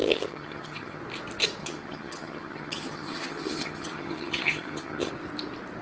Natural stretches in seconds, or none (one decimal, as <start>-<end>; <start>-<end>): 1.0-1.6; 5.1-5.8